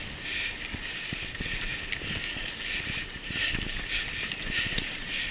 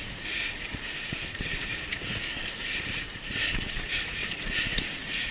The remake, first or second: second